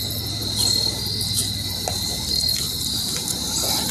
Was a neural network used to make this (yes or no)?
no